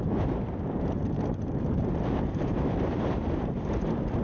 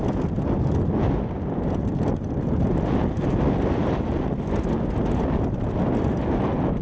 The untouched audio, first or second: second